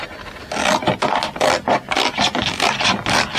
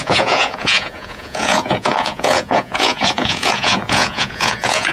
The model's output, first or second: second